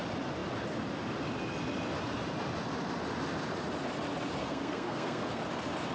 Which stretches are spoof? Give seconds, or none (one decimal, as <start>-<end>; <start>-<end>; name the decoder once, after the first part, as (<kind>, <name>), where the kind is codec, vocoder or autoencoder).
4.4-5.4 (codec, SNAC)